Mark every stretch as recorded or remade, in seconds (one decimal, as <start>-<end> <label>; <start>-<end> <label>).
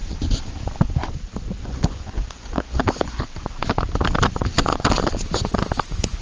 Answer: 0.0-1.6 recorded; 1.6-3.2 remade; 3.2-6.2 recorded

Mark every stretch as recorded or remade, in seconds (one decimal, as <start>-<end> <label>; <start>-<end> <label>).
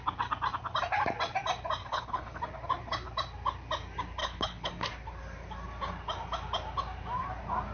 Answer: 0.0-1.8 recorded; 1.8-2.4 remade; 2.4-4.2 recorded; 4.2-4.7 remade; 4.7-7.7 recorded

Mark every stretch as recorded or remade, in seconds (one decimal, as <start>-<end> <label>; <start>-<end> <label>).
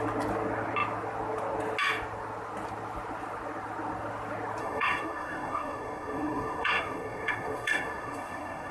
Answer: 0.0-4.6 recorded; 4.6-8.7 remade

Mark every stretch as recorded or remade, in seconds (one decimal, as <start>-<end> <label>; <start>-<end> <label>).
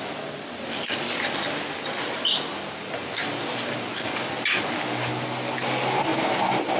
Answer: 0.0-6.8 recorded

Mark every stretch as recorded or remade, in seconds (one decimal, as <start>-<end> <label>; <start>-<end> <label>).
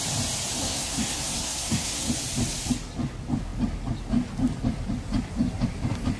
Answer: 0.0-0.6 recorded; 0.6-2.1 remade; 2.1-6.2 recorded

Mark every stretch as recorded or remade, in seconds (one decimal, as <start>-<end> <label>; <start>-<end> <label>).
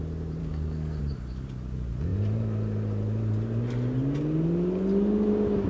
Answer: 0.0-0.4 recorded; 0.4-1.0 remade; 1.0-5.7 recorded